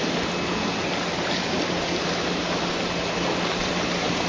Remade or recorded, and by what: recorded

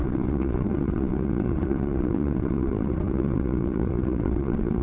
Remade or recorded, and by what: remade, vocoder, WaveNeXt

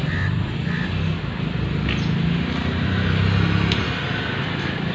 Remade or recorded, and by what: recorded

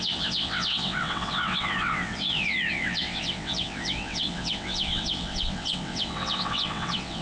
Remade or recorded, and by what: remade, vocoder, WaveNeXt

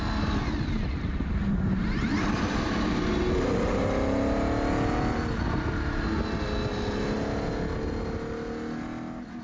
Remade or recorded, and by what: recorded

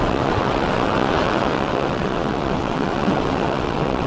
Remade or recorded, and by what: remade, vocoder, WaveNeXt